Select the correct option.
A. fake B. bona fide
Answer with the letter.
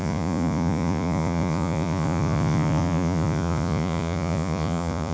A